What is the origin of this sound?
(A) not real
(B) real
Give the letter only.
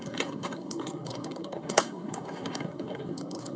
A